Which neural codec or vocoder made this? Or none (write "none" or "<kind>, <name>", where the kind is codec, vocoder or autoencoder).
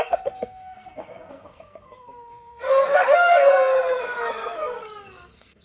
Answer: codec, SNAC